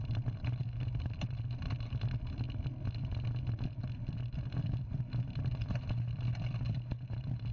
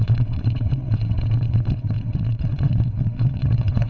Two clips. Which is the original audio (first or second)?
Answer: first